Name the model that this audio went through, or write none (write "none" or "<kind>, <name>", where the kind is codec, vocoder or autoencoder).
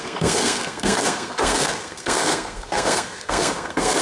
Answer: codec, SNAC